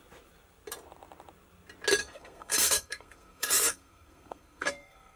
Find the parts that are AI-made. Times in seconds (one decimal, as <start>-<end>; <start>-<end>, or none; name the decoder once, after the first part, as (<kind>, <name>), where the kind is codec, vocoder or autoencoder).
2.0-5.2 (codec, SNAC)

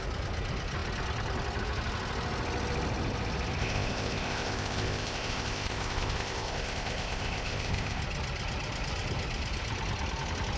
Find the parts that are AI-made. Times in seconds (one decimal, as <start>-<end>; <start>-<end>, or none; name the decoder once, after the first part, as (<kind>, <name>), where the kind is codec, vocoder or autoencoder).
3.6-8.0 (codec, ZipCodec)

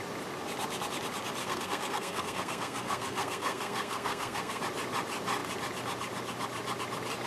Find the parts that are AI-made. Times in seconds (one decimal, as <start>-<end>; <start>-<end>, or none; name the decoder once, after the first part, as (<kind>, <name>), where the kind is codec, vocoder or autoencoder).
1.4-4.6 (codec, SNAC)

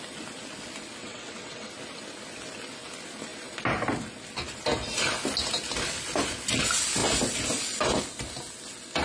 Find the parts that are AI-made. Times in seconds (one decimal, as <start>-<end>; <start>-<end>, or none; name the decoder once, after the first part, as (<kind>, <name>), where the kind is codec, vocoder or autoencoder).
1.0-1.7 (vocoder, WaveNeXt)

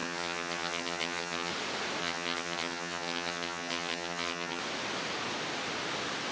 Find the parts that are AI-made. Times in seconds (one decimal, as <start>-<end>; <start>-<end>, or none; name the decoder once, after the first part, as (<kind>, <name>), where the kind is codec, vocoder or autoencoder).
0.0-1.5 (vocoder, HiFi-GAN); 2.0-4.6

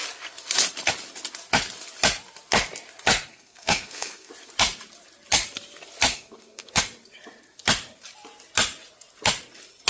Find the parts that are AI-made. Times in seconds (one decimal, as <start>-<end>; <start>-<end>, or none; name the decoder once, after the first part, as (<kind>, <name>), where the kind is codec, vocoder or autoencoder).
3.3-4.3 (codec, SNAC); 6.1-6.8

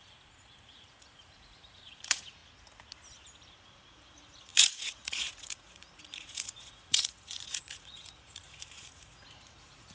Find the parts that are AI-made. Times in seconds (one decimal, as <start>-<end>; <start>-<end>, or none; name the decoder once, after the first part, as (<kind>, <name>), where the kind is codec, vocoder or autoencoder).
0.0-2.4 (vocoder, Vocos); 3.5-9.9

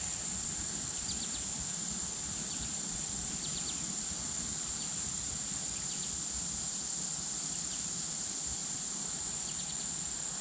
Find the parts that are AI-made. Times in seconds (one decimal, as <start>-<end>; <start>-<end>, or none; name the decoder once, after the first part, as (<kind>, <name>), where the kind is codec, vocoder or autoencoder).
none